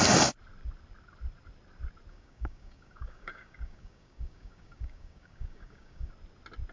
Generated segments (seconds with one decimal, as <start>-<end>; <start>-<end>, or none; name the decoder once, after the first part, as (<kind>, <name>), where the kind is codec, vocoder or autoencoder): 2.1-6.1 (codec, DAC)